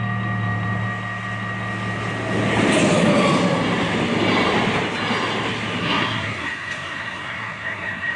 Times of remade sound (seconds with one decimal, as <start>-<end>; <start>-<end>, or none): 5.8-8.2